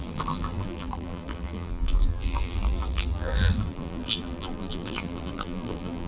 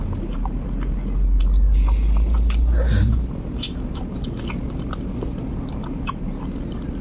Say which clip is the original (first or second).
second